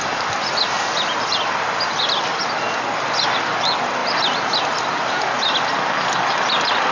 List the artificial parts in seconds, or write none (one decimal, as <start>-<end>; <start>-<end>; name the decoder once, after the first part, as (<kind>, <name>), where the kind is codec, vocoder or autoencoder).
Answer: none